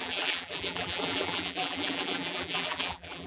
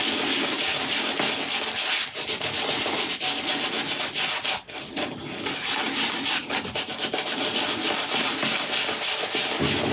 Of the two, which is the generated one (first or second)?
first